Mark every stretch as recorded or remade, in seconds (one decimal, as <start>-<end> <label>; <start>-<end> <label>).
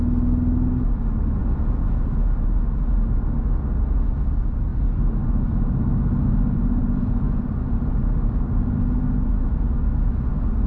0.0-6.8 recorded; 6.8-7.5 remade; 7.5-10.7 recorded